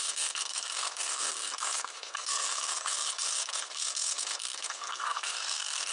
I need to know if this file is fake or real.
fake